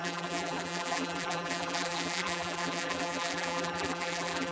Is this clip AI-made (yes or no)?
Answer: yes